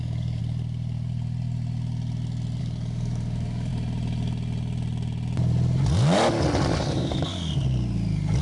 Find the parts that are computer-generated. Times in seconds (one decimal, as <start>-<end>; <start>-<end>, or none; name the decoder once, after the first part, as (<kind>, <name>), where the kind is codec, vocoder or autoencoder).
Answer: 0.0-0.4 (codec, DAC); 2.6-3.7; 6.8-7.3